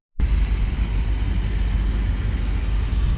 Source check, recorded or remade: recorded